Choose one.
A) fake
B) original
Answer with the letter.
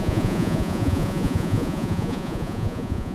A